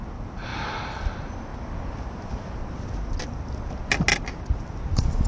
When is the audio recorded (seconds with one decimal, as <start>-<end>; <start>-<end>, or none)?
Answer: 0.0-5.3

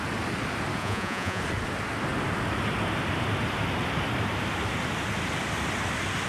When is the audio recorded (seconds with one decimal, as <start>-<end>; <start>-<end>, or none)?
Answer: 0.0-0.8; 1.4-6.3

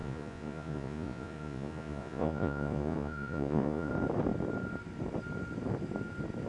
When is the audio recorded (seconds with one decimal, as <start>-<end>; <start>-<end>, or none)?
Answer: 3.9-6.5

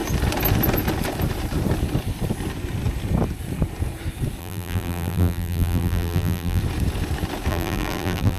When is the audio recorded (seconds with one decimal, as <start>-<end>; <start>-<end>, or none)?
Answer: 0.0-4.4; 6.6-7.5

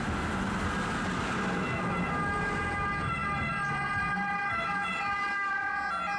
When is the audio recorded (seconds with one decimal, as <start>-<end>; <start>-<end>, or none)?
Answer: 0.0-6.2